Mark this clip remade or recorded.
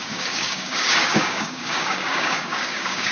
remade